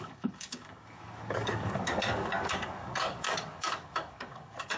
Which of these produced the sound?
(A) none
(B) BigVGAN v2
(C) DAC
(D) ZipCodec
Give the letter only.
C